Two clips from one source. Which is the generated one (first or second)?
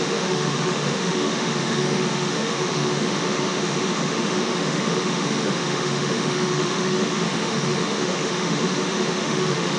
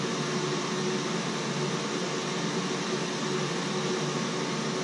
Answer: first